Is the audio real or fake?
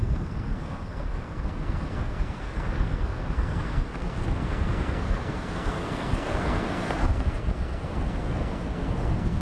fake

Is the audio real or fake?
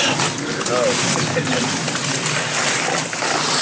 real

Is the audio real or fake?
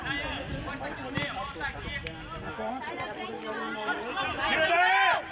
real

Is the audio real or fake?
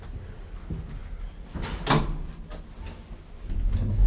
real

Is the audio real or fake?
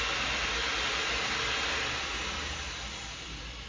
real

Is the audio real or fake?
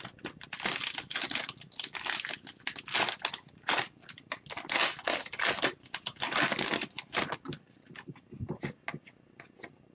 real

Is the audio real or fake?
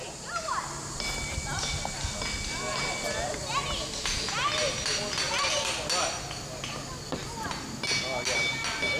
real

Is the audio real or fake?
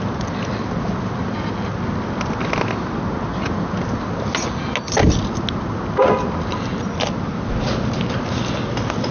real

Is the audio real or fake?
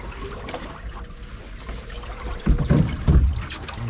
real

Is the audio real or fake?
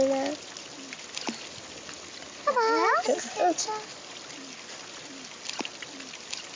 real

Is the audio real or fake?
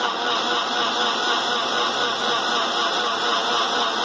real